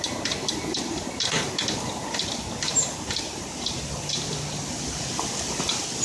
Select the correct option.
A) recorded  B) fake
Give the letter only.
A